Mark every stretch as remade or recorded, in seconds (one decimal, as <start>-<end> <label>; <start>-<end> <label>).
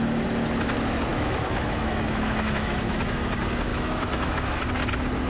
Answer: 0.0-1.1 recorded; 1.1-3.3 remade; 3.3-3.7 recorded; 3.7-4.6 remade; 4.6-5.3 recorded